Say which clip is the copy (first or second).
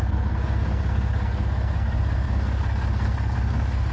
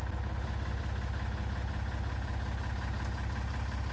first